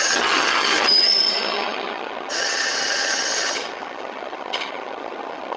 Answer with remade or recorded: remade